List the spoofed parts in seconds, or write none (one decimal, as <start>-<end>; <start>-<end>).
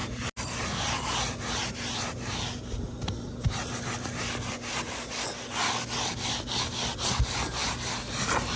none